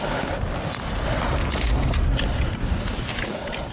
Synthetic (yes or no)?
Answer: no